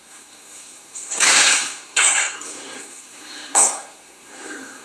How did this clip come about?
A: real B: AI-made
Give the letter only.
B